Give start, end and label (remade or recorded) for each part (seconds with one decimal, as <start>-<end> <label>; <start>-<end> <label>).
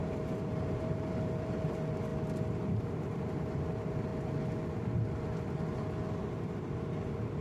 0.0-2.1 remade; 2.1-2.8 recorded; 2.8-4.1 remade; 4.1-6.2 recorded; 6.2-7.4 remade